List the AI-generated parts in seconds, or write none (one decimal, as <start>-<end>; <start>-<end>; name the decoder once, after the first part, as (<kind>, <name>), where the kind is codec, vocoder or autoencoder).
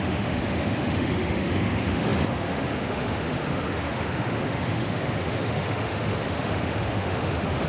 0.0-7.7 (autoencoder, DAC-VAE)